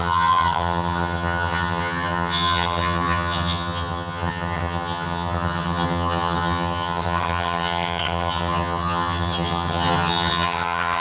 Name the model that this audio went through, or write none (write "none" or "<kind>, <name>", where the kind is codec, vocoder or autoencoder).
vocoder, HiFi-GAN